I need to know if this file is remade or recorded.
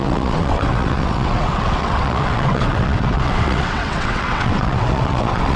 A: remade